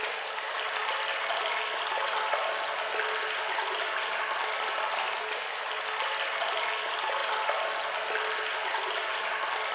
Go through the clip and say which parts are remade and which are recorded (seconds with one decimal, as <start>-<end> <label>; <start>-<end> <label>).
0.0-9.7 recorded